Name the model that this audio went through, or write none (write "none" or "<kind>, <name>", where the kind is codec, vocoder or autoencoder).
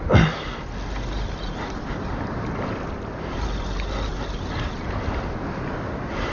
none